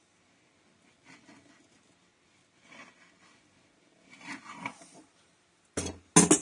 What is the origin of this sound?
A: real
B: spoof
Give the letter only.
A